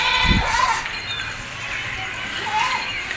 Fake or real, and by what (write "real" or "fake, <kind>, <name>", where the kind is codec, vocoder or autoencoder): real